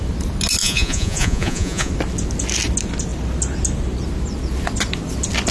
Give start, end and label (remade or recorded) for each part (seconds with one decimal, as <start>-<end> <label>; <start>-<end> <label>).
0.0-0.6 recorded; 0.6-1.9 remade; 1.9-5.5 recorded